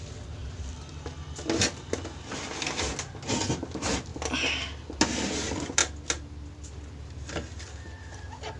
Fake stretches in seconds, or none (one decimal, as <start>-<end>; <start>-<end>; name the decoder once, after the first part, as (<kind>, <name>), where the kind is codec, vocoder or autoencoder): none